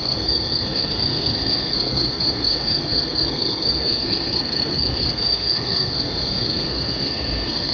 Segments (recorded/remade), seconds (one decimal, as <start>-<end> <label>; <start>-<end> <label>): 0.0-7.7 remade